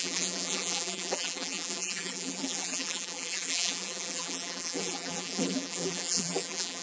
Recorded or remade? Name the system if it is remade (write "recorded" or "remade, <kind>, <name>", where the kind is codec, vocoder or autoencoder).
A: remade, vocoder, BigVGAN v2